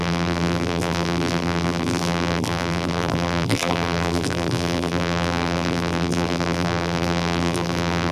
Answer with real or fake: fake